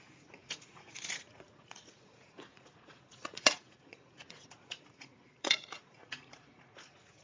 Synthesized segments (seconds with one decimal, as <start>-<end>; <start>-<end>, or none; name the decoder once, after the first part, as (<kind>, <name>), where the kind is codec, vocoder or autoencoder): 0.0-7.2 (vocoder, Vocos)